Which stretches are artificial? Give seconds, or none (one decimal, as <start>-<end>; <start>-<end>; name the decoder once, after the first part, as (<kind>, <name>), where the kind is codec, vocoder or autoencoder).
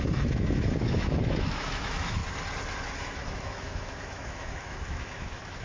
0.0-2.2 (autoencoder, DAC-VAE); 3.0-5.6